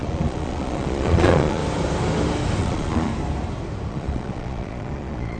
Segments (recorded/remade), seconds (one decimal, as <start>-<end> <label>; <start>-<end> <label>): 0.0-1.6 remade; 1.6-2.6 recorded; 2.6-3.1 remade; 3.1-3.9 recorded; 3.9-5.4 remade